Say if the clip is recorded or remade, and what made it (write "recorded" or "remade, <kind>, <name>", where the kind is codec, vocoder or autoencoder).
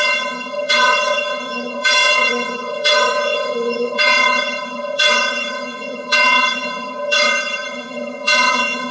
remade, vocoder, HiFi-GAN